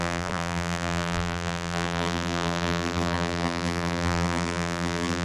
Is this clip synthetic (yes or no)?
yes